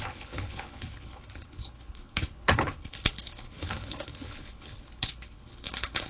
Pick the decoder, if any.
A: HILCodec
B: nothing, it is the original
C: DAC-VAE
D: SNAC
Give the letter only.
A